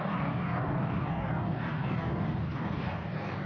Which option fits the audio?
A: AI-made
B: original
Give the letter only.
A